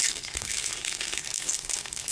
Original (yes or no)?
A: no